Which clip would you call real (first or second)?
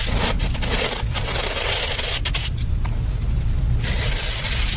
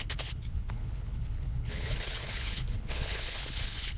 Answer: first